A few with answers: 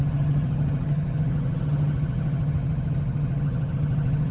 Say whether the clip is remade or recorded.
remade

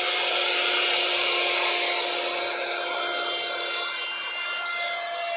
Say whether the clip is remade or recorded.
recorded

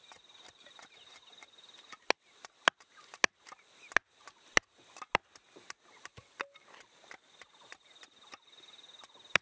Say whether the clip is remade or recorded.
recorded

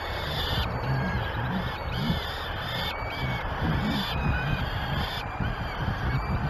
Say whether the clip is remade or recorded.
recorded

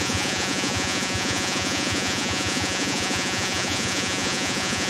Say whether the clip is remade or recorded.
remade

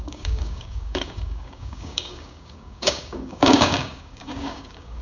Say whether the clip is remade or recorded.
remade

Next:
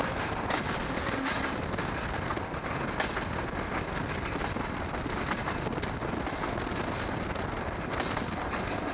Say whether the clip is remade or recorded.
recorded